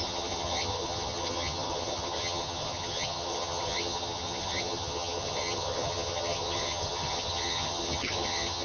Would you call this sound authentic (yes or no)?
no